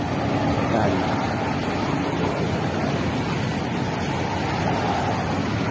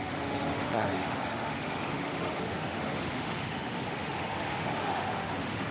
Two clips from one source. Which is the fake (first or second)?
second